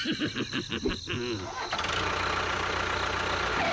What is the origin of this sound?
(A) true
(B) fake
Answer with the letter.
A